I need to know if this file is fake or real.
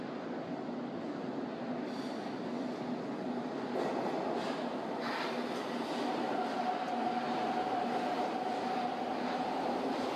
real